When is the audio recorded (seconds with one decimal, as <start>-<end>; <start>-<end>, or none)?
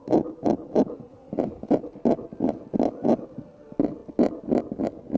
0.0-5.2